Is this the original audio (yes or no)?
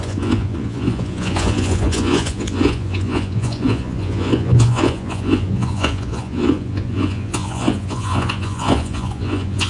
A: no